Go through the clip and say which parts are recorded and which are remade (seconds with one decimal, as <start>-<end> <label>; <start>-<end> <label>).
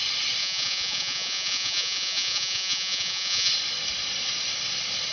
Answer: 0.0-0.4 recorded; 0.4-3.5 remade; 3.5-5.1 recorded